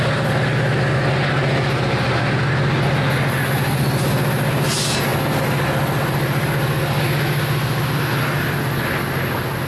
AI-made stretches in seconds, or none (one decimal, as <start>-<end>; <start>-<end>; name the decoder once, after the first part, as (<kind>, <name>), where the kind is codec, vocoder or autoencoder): none